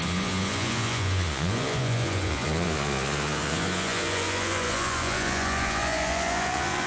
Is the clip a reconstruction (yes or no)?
yes